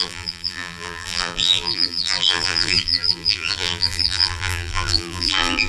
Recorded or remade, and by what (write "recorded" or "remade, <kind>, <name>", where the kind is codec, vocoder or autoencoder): remade, vocoder, BigVGAN v2